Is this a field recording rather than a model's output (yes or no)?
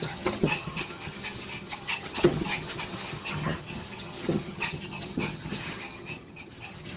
no